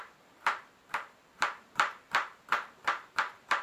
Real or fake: fake